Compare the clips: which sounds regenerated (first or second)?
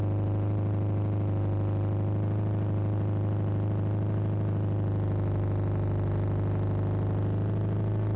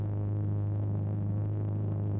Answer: second